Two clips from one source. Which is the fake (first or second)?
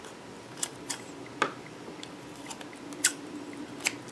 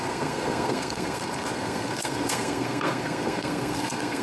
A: second